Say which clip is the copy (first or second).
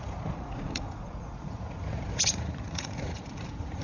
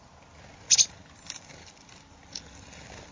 first